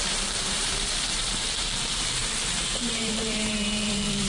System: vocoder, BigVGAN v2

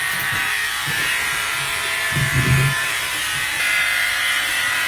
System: vocoder, BigVGAN v2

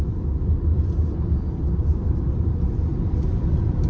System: vocoder, BigVGAN v2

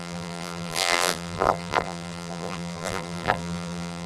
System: vocoder, BigVGAN v2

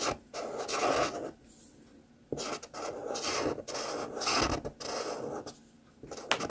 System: none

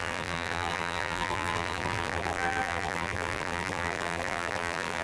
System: vocoder, BigVGAN v2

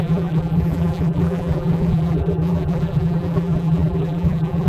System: vocoder, BigVGAN v2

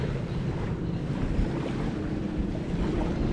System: none